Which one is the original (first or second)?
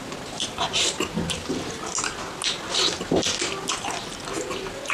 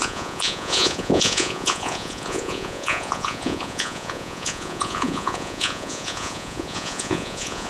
first